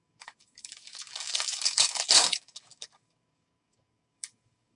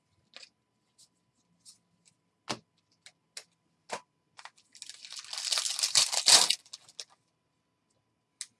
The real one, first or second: second